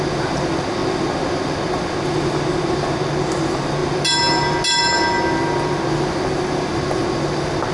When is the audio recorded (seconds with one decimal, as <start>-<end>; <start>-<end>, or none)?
0.0-7.7

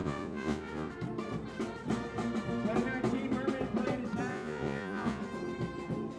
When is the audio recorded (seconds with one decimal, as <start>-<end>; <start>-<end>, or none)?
0.9-4.3; 5.2-6.2

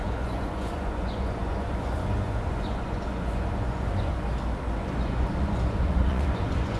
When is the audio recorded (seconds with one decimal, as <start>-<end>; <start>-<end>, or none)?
4.1-4.8

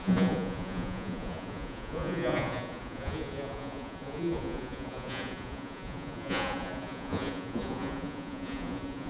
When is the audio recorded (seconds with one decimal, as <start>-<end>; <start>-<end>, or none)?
none

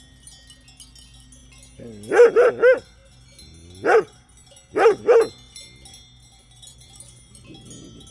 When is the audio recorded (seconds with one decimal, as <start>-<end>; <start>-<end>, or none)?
0.0-8.1

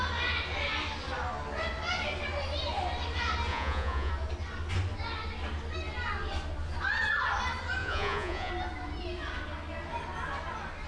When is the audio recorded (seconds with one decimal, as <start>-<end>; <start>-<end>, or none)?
0.0-3.5; 4.1-7.8; 8.5-10.9

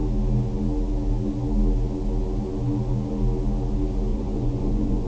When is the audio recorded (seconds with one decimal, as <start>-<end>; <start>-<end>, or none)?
0.0-4.1